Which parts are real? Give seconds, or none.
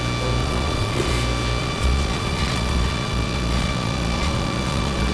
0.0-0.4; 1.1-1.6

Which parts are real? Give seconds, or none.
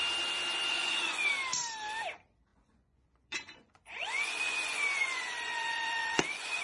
0.0-0.7; 1.3-2.5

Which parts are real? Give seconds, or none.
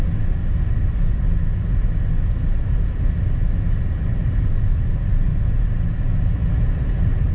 0.4-4.1; 5.3-6.6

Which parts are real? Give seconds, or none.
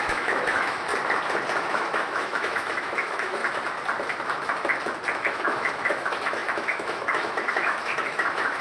0.9-1.7; 3.4-5.1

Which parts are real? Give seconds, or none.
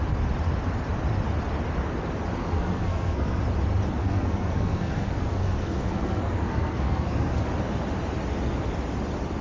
0.0-2.4; 3.4-4.0; 7.5-9.4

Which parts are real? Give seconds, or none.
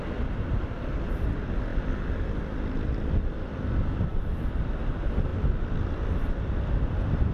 1.7-2.4